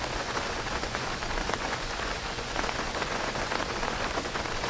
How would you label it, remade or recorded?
remade